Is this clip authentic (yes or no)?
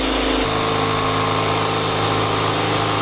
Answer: yes